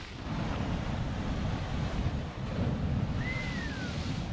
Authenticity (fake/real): fake